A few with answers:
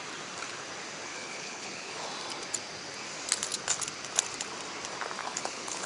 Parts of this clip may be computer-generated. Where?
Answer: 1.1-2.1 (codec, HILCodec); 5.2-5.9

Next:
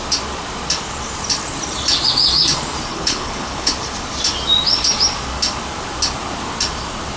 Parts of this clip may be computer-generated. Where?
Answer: 2.9-3.7 (codec, HILCodec)